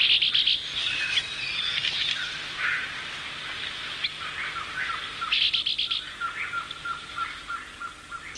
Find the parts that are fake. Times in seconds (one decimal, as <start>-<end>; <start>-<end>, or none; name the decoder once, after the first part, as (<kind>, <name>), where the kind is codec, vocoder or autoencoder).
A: none